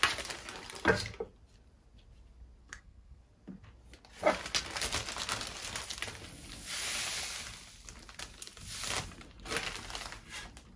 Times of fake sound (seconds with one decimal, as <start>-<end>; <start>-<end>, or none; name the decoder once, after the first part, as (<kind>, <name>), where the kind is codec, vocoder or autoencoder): 2.6-3.2 (codec, SNAC)